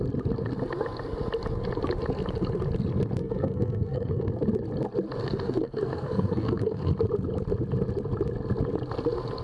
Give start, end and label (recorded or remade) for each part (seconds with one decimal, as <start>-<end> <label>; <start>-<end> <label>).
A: 0.0-3.2 recorded; 3.2-4.3 remade; 4.3-5.2 recorded; 5.2-6.9 remade; 6.9-9.4 recorded